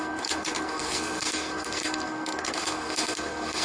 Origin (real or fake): fake